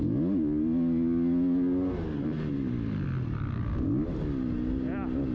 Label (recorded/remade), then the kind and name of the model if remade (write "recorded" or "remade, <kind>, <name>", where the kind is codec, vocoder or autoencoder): recorded